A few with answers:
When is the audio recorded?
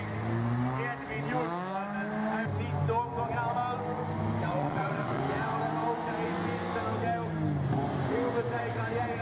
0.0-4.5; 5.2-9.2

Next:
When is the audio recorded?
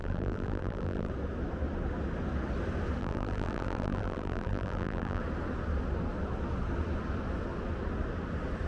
1.1-3.0; 5.2-8.7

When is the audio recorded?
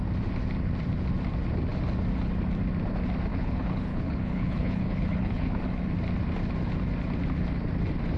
0.0-3.3; 5.6-8.2